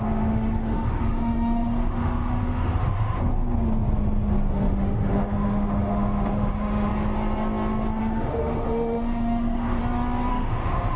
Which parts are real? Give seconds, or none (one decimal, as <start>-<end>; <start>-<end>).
3.4-4.5; 6.9-8.0; 9.8-10.3